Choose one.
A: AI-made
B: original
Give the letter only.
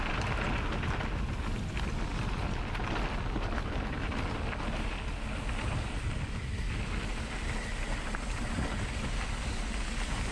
B